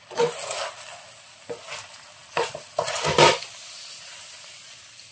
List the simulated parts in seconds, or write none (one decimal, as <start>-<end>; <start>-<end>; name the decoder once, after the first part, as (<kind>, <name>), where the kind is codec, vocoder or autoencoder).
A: none